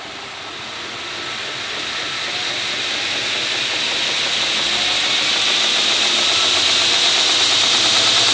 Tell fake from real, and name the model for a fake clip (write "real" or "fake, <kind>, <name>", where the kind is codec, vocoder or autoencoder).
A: real